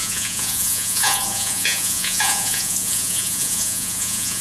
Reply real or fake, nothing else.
fake